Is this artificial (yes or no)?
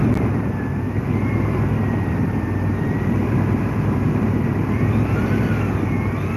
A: yes